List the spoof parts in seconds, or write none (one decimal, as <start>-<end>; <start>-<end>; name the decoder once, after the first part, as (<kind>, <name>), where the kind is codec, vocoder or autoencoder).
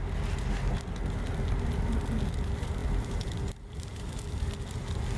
2.8-4.5 (vocoder, BigVGAN v2)